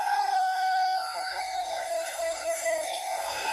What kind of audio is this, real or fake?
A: fake